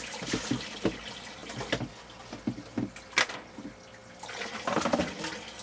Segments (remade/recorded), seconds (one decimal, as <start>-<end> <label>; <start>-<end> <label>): 0.0-5.6 recorded